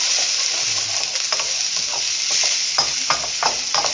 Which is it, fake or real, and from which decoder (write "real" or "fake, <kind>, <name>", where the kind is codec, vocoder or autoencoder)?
real